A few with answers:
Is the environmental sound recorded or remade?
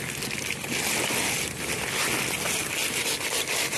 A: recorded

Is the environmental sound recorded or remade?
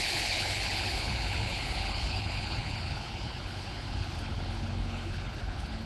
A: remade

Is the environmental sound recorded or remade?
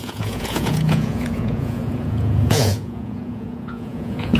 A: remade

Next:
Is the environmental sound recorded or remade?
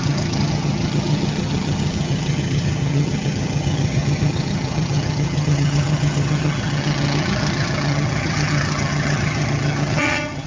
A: remade